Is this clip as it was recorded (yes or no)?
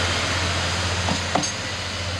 yes